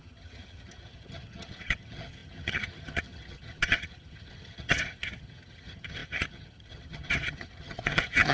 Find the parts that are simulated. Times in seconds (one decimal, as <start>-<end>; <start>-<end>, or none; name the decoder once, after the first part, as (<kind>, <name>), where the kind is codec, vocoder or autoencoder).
0.0-8.3 (vocoder, HiFi-GAN)